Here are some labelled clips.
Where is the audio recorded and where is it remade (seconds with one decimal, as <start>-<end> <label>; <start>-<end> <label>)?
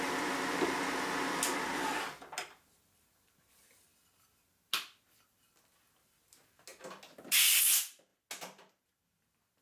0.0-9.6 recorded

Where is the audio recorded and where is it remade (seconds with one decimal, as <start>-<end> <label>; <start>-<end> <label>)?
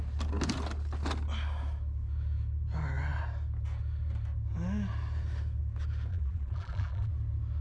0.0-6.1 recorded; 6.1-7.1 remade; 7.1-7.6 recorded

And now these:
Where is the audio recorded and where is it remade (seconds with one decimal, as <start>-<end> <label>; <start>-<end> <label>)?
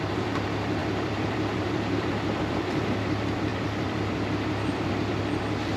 0.0-5.8 remade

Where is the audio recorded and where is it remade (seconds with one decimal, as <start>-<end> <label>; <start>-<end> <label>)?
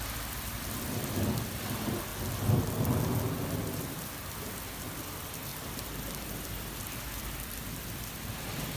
0.0-2.1 remade; 2.1-3.7 recorded; 3.7-8.8 remade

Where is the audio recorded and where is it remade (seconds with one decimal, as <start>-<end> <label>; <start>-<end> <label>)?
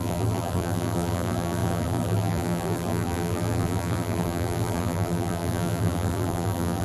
0.0-6.8 remade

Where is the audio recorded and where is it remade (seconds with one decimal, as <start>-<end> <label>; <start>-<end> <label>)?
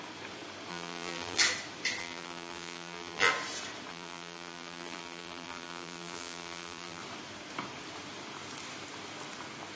0.0-0.7 recorded; 0.7-1.4 remade; 1.4-2.0 recorded; 2.0-3.3 remade; 3.3-3.9 recorded; 3.9-7.0 remade; 7.0-9.8 recorded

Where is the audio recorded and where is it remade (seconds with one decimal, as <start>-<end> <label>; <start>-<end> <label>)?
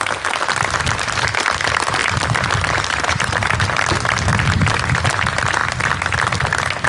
0.0-2.0 recorded; 2.0-3.0 remade; 3.0-4.3 recorded; 4.3-5.0 remade; 5.0-5.6 recorded; 5.6-6.9 remade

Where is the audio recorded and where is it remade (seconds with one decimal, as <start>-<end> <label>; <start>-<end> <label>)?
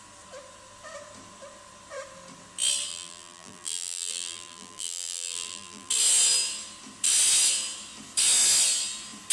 0.0-2.9 recorded; 2.9-5.9 remade; 5.9-9.3 recorded